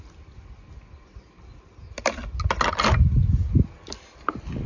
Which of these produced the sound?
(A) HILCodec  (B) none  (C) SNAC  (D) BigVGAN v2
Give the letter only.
B